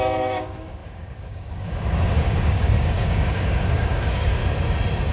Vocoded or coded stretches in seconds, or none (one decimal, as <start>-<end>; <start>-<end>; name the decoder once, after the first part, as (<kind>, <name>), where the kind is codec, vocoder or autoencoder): 0.0-4.4 (codec, DAC)